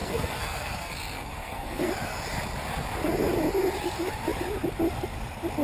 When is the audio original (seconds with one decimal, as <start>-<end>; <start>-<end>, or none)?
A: 1.9-5.6